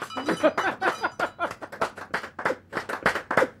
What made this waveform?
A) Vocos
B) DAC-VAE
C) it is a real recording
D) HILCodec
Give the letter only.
C